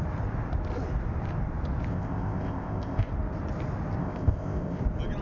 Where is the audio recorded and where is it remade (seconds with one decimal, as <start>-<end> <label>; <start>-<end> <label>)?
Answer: 0.0-1.9 recorded; 1.9-3.1 remade; 3.1-4.0 recorded; 4.0-4.8 remade; 4.8-5.2 recorded